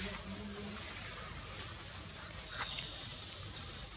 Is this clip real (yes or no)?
yes